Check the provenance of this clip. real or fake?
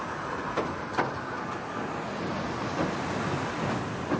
real